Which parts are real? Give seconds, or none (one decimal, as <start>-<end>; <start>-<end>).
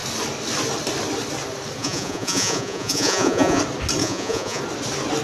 0.0-1.8; 3.6-4.0; 4.6-5.2